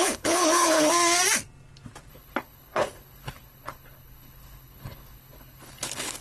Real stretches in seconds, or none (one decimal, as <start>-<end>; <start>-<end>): 0.9-2.1